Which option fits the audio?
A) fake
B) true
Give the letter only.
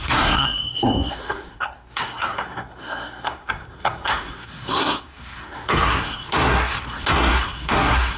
A